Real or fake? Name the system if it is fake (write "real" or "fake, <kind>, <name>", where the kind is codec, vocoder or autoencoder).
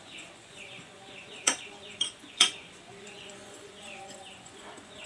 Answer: fake, vocoder, Vocos